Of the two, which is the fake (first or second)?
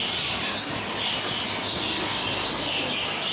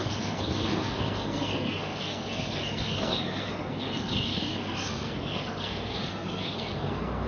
second